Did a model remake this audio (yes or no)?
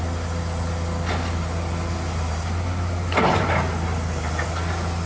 no